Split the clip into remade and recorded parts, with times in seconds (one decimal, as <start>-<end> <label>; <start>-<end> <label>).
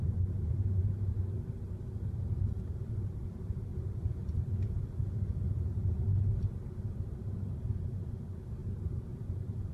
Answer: 0.0-0.6 remade; 0.6-3.3 recorded; 3.3-3.7 remade; 3.7-6.9 recorded; 6.9-9.7 remade